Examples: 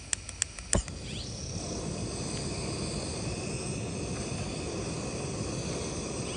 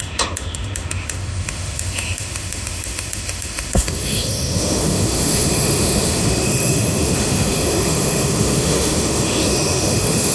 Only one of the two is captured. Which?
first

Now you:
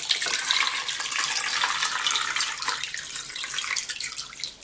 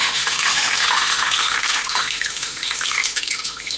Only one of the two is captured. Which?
first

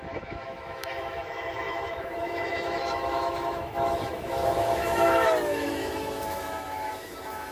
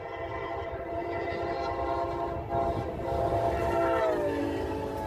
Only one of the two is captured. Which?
second